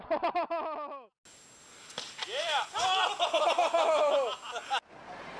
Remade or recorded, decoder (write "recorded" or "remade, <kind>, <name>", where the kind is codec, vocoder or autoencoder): recorded